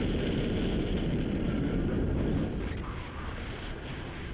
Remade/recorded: recorded